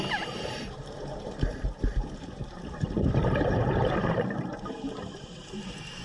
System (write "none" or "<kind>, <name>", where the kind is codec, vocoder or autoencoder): vocoder, BigVGAN v2